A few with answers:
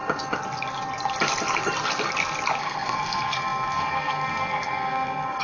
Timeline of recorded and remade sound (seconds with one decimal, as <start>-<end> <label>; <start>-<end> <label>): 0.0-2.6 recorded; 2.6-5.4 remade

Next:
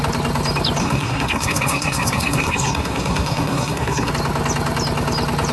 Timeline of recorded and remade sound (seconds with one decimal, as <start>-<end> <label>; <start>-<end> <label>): 0.0-0.8 recorded; 0.8-4.1 remade; 4.1-5.5 recorded

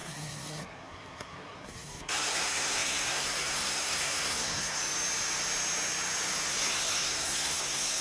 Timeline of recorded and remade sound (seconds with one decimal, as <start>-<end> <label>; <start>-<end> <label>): 0.0-4.8 remade; 4.8-6.5 recorded; 6.5-8.0 remade

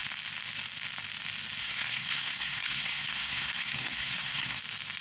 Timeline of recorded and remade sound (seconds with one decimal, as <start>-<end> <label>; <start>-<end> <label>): 0.0-1.6 recorded; 1.6-4.6 remade; 4.6-5.0 recorded

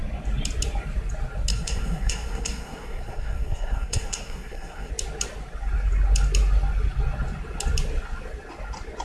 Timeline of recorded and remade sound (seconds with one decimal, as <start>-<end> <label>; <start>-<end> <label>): 0.0-1.5 recorded; 1.5-4.9 remade; 4.9-9.0 recorded

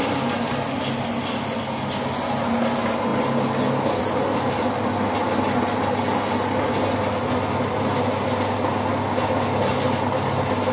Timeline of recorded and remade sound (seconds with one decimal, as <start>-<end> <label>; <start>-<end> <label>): 0.0-10.7 recorded

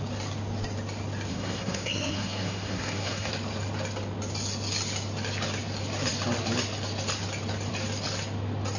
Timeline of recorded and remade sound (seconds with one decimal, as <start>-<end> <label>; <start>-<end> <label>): 0.0-1.3 recorded; 1.3-3.3 remade; 3.3-8.8 recorded